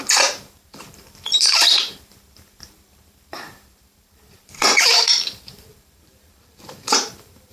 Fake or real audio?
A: fake